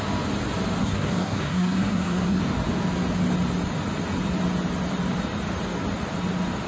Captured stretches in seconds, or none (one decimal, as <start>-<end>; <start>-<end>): 0.0-0.8; 2.4-6.7

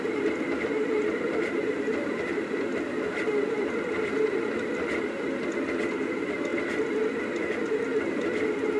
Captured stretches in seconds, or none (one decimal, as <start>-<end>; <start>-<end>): 0.0-8.8